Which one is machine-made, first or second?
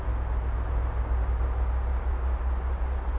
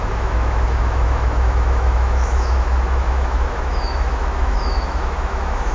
second